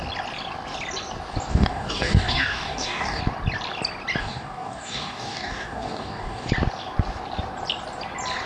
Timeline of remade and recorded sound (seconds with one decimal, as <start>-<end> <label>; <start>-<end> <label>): 0.0-1.5 recorded; 1.5-3.2 remade; 3.2-4.2 recorded; 4.2-6.5 remade; 6.5-8.5 recorded